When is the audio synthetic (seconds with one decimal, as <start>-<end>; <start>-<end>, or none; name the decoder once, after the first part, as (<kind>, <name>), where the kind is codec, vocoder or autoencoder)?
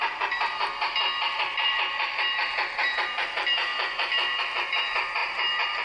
0.0-0.7 (vocoder, BigVGAN v2); 1.3-5.8